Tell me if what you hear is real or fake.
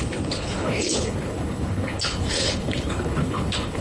fake